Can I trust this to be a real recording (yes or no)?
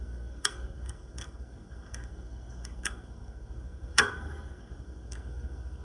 no